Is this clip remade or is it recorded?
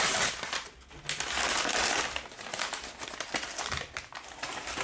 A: recorded